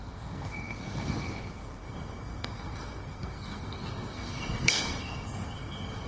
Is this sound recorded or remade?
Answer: remade